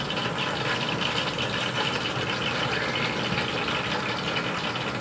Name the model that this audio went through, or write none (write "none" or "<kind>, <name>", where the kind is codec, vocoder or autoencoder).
none